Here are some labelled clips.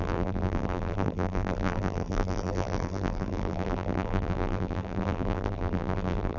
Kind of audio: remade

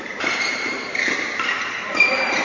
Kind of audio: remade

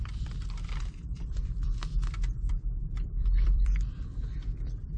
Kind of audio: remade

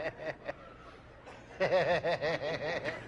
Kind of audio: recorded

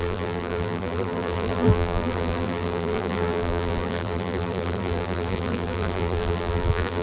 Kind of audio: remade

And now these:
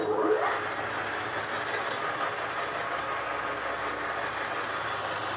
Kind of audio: recorded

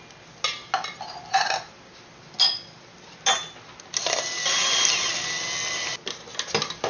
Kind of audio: recorded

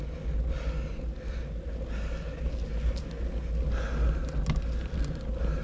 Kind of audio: recorded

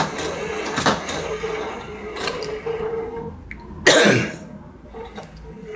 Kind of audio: recorded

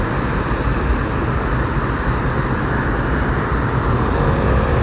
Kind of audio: recorded